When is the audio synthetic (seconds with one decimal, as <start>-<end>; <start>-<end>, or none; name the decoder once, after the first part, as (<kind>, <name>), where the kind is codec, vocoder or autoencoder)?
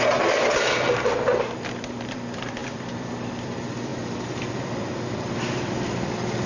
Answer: 0.0-3.9 (vocoder, BigVGAN v2); 4.5-6.5